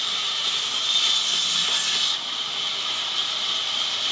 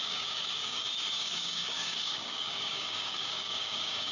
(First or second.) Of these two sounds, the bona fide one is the first